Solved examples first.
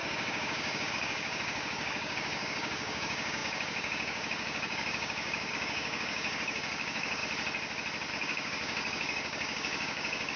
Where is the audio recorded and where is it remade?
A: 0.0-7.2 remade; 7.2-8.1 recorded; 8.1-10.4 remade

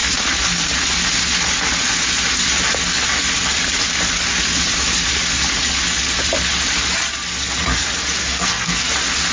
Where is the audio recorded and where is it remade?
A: 0.0-8.2 recorded; 8.2-8.9 remade; 8.9-9.3 recorded

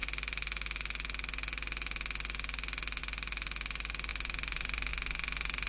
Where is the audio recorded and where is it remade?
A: 0.0-5.7 recorded